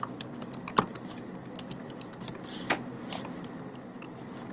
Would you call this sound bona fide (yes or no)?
yes